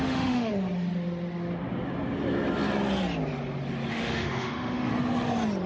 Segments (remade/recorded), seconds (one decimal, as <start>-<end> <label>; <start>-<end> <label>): 0.0-0.5 remade; 0.5-3.9 recorded; 3.9-4.9 remade; 4.9-5.7 recorded